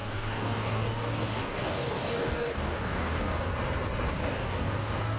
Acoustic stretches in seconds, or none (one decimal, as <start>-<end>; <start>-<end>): 3.5-4.1